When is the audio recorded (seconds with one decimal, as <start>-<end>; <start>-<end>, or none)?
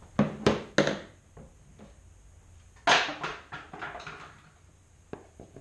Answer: 0.0-5.6